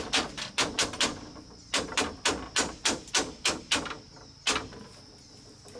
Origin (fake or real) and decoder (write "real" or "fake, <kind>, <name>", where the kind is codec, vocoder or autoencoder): real